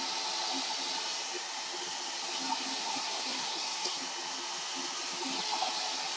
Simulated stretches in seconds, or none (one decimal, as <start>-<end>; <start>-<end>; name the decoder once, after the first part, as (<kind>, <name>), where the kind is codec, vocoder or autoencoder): 2.8-4.0 (codec, SNAC)